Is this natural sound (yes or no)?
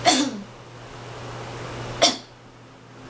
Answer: yes